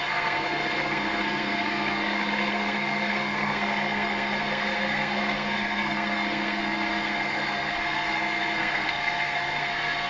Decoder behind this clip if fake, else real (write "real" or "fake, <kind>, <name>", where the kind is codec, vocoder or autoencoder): fake, codec, SNAC